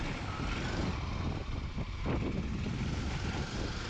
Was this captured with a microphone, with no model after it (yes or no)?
no